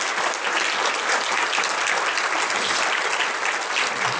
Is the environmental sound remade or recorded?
recorded